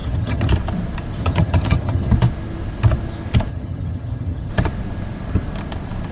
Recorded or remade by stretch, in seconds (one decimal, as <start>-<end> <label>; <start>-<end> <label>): 0.0-0.5 remade; 0.5-1.2 recorded; 1.2-2.1 remade; 2.1-3.5 recorded; 3.5-4.5 remade; 4.5-6.1 recorded